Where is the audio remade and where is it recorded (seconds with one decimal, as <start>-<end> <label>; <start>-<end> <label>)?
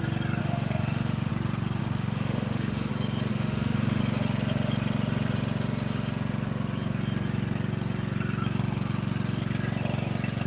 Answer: 0.0-0.4 recorded; 0.4-1.3 remade; 1.3-1.8 recorded; 1.8-2.9 remade; 2.9-3.3 recorded; 3.3-4.0 remade; 4.0-10.5 recorded